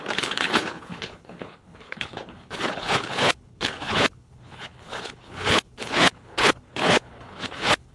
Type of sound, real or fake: fake